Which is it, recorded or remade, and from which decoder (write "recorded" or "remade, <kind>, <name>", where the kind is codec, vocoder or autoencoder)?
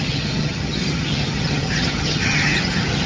remade, vocoder, HiFi-GAN